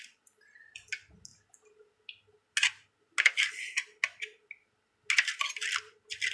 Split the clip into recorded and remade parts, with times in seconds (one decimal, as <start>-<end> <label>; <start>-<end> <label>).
0.0-6.3 recorded